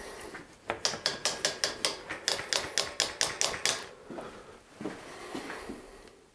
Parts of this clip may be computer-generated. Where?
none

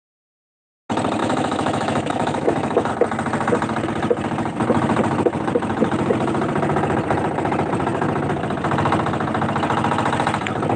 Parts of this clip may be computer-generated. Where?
1.2-2.9

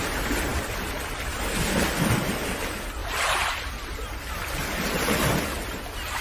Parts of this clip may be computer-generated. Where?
none

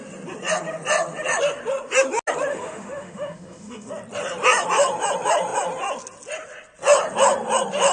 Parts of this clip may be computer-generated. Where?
2.5-3.9